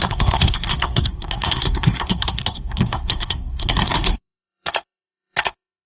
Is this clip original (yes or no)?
no